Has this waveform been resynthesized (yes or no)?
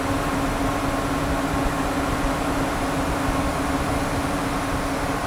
no